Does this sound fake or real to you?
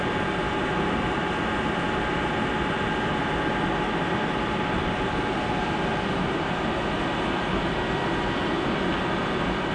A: real